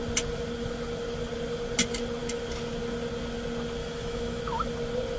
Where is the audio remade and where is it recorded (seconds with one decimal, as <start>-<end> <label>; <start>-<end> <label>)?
0.0-3.8 recorded; 3.8-4.4 remade; 4.4-5.2 recorded